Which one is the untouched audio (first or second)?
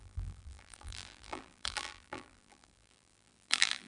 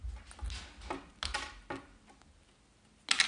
second